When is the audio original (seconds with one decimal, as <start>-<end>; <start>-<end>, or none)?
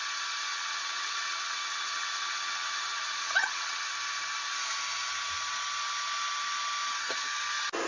0.0-0.5; 3.9-7.9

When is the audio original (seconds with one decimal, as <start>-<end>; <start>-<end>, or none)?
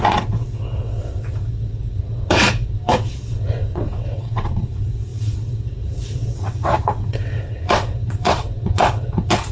none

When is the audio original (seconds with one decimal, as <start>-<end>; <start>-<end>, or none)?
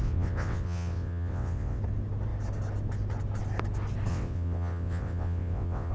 1.8-4.1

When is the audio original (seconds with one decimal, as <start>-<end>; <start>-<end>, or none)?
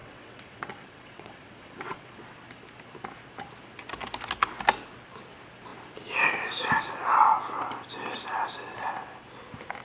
2.2-9.8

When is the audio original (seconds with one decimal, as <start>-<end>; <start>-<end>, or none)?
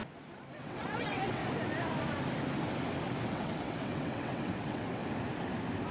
0.0-0.6; 1.4-3.3; 5.0-5.9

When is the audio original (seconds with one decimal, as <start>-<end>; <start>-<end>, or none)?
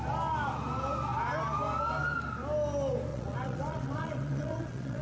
0.0-3.1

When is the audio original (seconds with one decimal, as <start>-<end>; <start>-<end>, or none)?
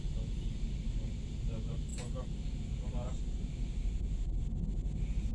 0.0-5.3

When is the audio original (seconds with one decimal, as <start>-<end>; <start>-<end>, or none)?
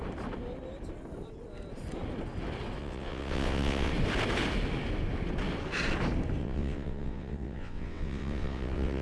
0.0-2.8; 3.9-6.4